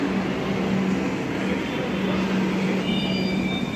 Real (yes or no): yes